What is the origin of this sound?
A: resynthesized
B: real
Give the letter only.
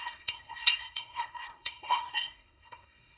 A